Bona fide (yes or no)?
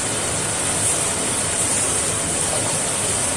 yes